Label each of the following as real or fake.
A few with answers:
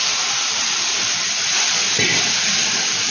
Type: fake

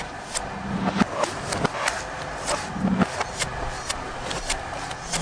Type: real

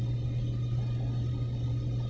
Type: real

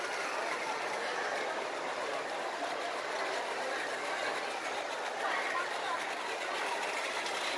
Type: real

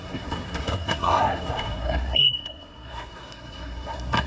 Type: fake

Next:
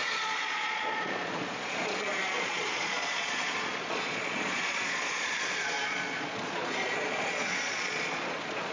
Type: fake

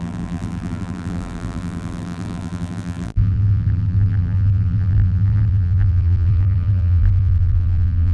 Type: fake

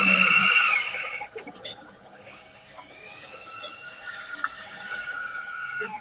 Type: fake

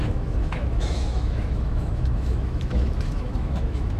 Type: fake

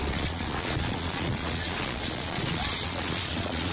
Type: fake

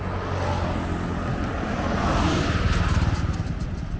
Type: real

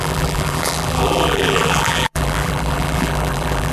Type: fake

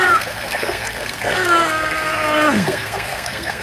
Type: fake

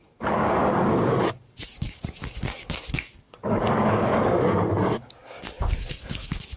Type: fake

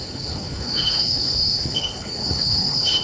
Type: fake